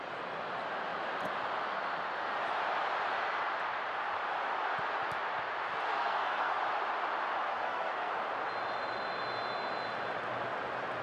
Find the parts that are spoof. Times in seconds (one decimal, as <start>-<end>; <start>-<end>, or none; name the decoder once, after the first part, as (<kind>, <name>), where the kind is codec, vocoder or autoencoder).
5.9-6.6 (codec, SNAC); 7.5-8.1